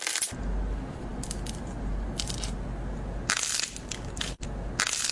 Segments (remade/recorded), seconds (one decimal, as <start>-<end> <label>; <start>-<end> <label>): 0.0-5.1 recorded